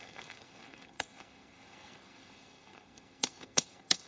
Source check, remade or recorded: remade